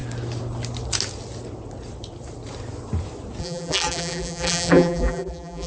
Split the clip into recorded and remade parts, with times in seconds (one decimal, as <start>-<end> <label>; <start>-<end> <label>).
0.0-3.4 recorded; 3.4-5.7 remade